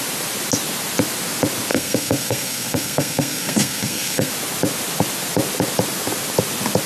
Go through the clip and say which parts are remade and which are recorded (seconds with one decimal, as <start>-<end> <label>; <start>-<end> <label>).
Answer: 0.0-1.7 recorded; 1.7-4.3 remade; 4.3-6.9 recorded